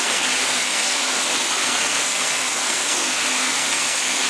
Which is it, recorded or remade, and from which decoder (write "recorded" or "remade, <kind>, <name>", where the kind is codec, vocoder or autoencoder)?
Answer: remade, codec, SNAC